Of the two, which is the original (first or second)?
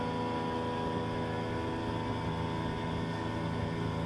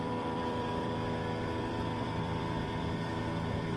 first